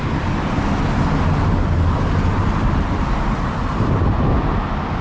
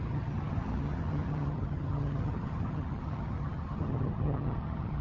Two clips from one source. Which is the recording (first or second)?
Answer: first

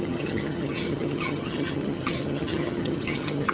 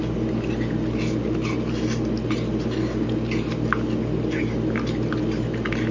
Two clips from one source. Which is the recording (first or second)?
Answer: second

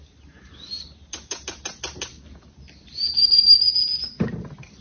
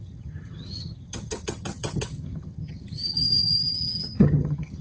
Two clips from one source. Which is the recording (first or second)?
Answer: first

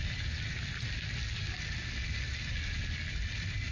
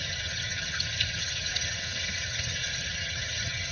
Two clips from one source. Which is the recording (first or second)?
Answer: first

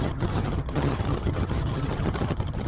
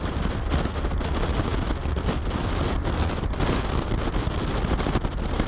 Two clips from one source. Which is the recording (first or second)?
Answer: second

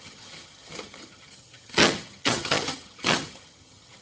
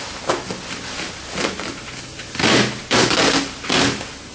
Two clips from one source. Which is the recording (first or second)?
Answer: second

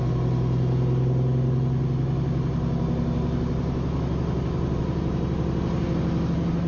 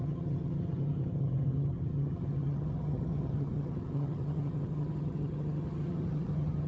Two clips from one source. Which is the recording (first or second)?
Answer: first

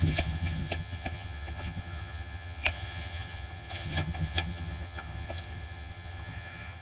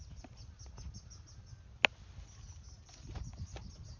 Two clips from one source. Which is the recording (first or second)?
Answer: second